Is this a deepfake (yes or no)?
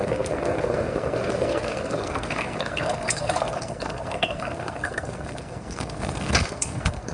yes